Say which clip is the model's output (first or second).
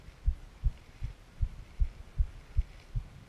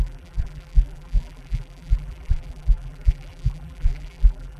second